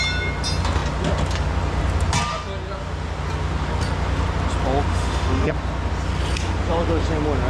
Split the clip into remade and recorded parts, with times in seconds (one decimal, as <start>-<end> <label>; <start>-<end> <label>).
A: 0.0-4.9 recorded; 4.9-5.5 remade; 5.5-7.5 recorded